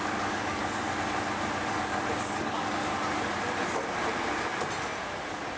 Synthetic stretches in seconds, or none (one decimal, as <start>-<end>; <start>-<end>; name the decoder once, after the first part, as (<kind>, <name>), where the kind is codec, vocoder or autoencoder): 0.0-0.6 (codec, DAC); 1.7-2.9